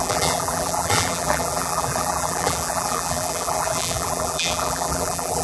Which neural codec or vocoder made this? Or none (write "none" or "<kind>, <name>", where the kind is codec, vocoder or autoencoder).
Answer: vocoder, BigVGAN v2